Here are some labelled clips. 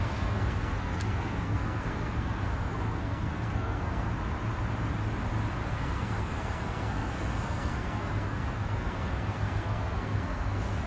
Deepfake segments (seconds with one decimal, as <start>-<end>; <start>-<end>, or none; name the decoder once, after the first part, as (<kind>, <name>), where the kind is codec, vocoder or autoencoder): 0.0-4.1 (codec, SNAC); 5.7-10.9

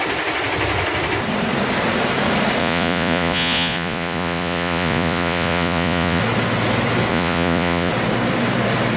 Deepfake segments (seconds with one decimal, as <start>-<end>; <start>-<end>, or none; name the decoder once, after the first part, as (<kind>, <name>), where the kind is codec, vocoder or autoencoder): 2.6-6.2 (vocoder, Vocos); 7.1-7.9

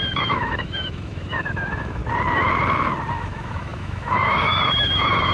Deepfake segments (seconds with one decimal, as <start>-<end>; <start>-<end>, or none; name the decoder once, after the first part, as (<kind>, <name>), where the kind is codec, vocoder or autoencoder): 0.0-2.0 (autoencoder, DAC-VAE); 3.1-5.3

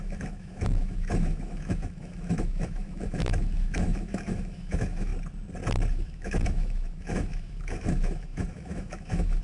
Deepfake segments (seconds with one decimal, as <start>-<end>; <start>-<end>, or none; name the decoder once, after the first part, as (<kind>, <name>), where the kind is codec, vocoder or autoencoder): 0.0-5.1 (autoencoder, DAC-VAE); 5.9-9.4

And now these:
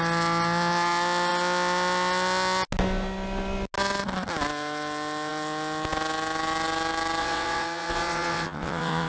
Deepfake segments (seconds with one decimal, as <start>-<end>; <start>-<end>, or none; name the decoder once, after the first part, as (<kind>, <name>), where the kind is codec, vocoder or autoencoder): 7.2-9.1 (vocoder, WaveNeXt)

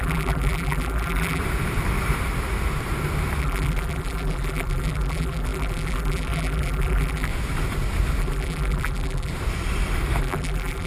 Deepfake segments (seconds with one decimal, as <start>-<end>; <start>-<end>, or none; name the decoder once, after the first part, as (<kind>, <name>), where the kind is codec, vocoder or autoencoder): 0.0-1.4 (vocoder, BigVGAN v2); 3.4-7.3; 8.2-9.3; 10.2-10.9